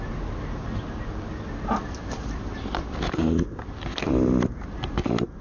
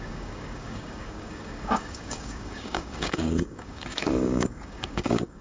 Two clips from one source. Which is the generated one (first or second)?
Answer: second